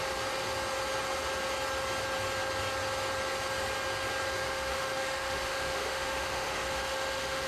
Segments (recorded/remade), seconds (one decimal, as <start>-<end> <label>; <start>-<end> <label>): 0.0-4.4 recorded; 4.4-7.5 remade